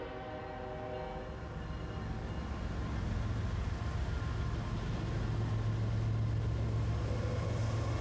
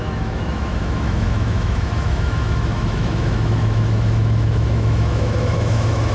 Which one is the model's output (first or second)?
second